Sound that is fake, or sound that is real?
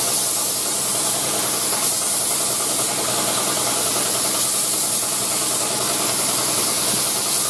real